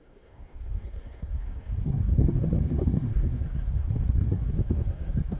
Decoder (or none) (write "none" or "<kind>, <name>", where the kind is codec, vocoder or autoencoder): codec, SNAC